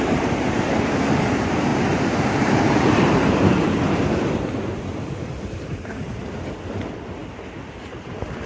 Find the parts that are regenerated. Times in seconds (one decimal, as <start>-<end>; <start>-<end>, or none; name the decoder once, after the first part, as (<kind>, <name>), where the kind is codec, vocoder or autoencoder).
1.7-6.2 (vocoder, BigVGAN v2)